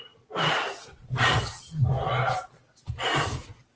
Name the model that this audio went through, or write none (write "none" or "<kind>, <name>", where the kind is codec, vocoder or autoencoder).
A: vocoder, BigVGAN v2